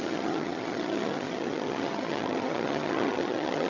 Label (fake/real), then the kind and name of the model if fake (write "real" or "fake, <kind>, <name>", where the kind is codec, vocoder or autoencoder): fake, vocoder, HiFi-GAN